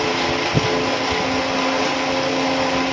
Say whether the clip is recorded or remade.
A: recorded